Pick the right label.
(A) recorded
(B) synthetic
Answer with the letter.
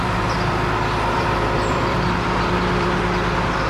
B